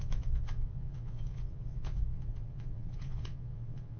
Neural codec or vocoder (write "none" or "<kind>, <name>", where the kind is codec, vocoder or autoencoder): vocoder, Vocos